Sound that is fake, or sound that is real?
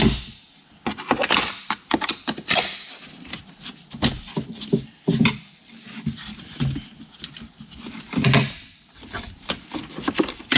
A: real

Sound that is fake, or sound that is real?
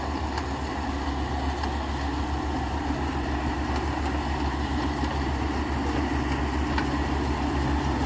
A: real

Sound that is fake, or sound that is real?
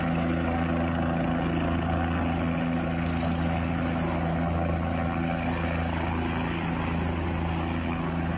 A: real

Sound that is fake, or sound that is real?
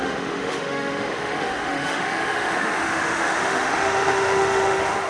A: fake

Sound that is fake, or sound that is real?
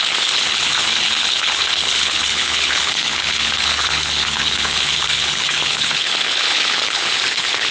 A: fake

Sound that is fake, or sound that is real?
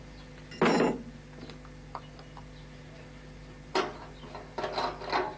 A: real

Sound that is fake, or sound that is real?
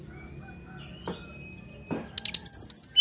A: real